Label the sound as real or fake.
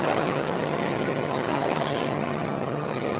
fake